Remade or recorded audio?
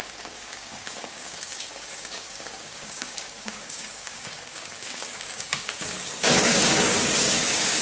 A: remade